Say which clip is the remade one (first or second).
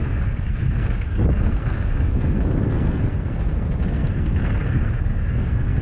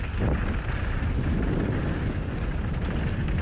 first